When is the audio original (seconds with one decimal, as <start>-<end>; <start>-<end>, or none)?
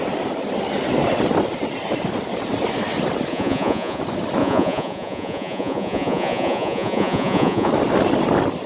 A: 0.0-3.3; 4.0-4.4; 7.7-8.7